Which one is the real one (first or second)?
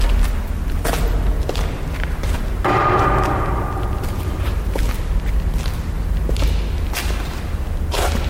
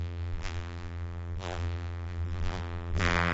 first